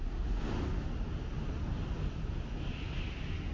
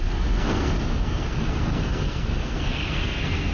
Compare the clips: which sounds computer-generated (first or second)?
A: second